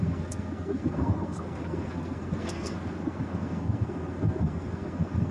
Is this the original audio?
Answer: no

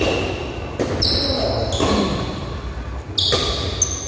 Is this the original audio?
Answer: yes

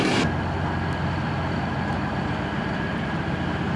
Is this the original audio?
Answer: yes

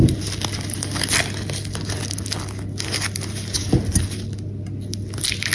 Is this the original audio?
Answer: yes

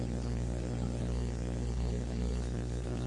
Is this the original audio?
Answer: no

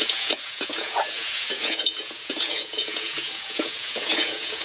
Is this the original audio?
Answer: no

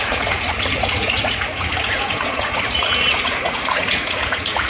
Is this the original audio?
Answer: no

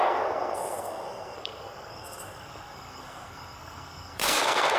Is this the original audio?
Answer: no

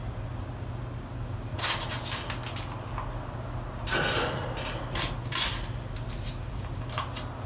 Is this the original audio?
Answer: yes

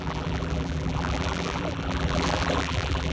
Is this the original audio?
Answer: no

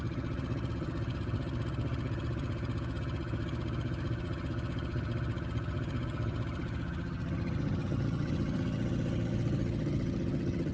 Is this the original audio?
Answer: no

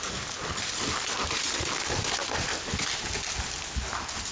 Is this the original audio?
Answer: yes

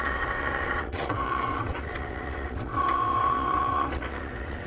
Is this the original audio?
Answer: no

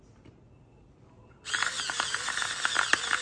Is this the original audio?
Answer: yes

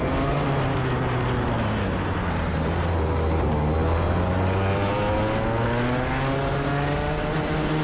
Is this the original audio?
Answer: yes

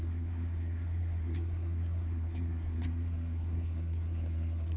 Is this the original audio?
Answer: no